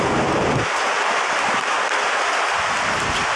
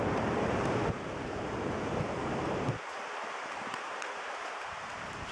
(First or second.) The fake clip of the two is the second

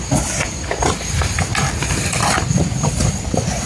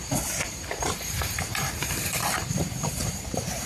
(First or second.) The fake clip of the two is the second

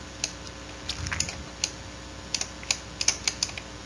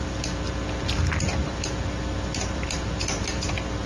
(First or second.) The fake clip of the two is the second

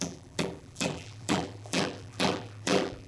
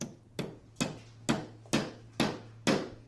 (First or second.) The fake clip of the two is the first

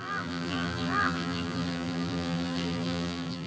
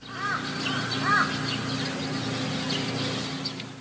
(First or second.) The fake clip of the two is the first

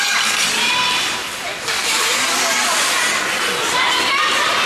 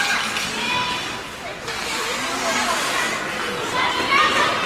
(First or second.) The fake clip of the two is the first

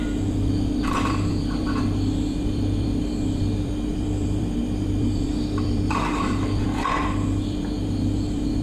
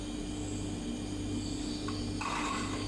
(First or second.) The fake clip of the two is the first